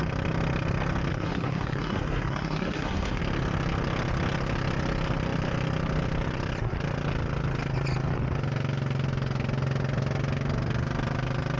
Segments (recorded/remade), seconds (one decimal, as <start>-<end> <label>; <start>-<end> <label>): 0.0-1.1 recorded; 1.1-3.2 remade; 3.2-11.6 recorded